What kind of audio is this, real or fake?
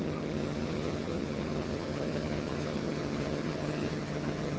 fake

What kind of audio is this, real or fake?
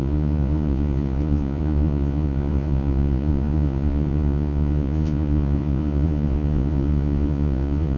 fake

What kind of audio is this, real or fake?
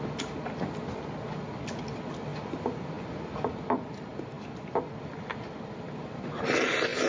real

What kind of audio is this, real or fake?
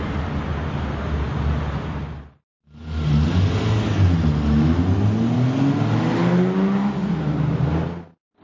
real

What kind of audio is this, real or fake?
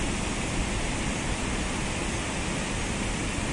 real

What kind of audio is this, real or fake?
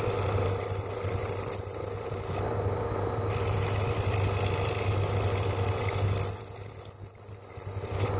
real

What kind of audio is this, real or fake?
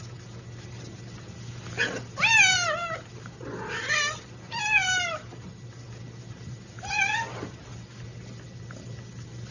real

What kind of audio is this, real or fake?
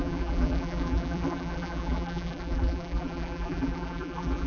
fake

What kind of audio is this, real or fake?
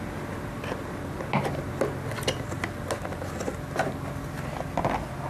real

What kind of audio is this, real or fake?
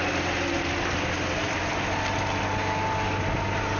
real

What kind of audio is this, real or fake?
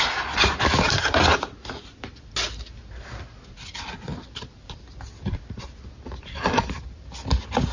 real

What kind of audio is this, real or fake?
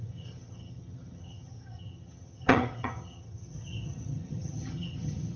fake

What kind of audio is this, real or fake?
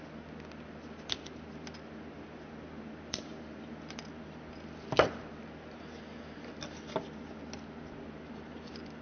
real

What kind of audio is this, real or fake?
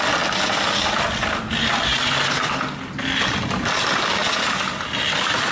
real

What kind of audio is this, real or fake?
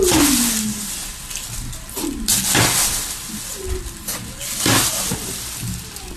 real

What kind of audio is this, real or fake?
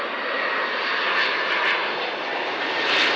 real